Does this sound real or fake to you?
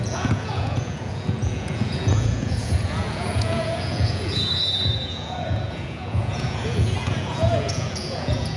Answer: fake